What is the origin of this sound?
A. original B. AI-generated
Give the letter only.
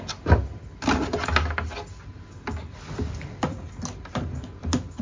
A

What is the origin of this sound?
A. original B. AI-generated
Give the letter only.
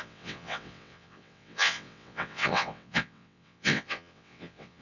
B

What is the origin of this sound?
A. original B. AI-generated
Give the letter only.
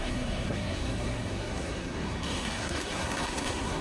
B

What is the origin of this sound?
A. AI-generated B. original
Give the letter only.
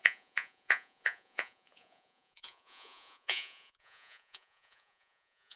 A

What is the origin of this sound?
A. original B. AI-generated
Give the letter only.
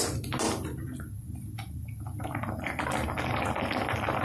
A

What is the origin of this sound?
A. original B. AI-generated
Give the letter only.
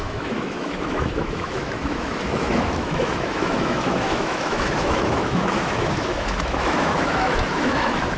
B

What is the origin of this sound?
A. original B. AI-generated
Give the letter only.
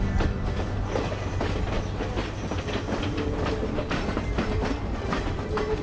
A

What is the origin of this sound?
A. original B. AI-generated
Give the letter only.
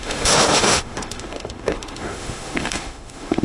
B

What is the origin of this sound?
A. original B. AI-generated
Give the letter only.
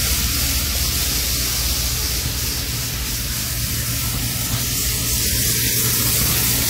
A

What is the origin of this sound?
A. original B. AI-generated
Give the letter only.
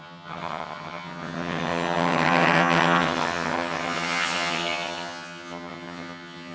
B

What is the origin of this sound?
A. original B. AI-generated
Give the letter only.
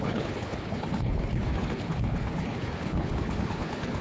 B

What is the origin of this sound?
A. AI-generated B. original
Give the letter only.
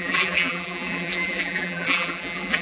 A